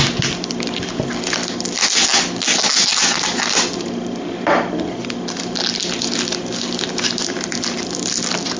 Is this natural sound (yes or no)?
yes